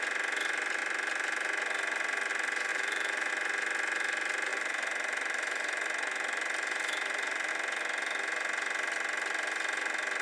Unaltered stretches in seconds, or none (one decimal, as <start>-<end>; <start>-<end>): 0.0-2.7; 3.3-4.5; 7.5-10.2